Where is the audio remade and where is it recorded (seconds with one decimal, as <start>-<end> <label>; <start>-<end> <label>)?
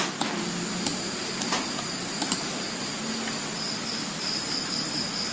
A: 0.0-0.9 recorded; 0.9-2.9 remade; 2.9-5.3 recorded